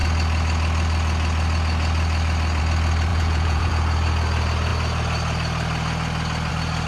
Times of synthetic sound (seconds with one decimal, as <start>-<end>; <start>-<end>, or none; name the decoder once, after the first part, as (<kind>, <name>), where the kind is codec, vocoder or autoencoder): 3.1-3.7 (vocoder, Vocos)